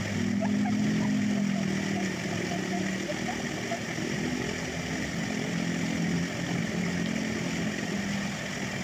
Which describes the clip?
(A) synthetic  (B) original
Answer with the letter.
A